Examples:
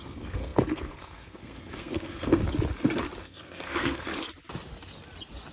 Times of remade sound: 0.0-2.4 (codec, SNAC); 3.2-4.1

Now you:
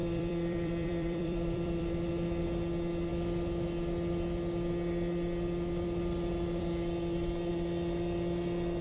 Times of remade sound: 0.0-2.1 (vocoder, BigVGAN v2)

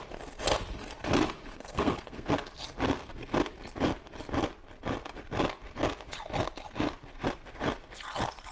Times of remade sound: 1.5-2.3 (codec, SNAC)

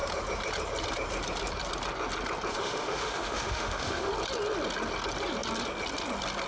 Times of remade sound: 2.5-4.1 (autoencoder, DAC-VAE)

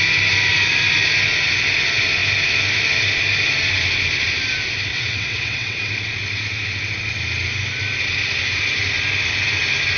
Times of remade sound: 4.9-5.9 (vocoder, WaveNeXt)

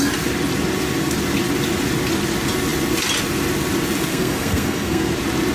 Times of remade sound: 4.1-5.1 (codec, SNAC)